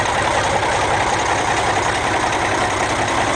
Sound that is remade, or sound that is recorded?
recorded